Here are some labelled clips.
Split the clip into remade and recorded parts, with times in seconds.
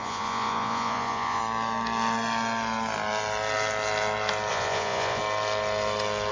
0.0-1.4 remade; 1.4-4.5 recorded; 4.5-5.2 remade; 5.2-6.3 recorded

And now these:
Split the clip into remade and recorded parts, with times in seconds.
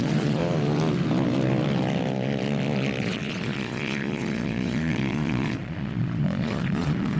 0.0-0.4 remade; 0.4-3.0 recorded; 3.0-7.2 remade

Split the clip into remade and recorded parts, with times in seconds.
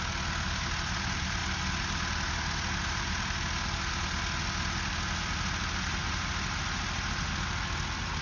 0.0-8.2 recorded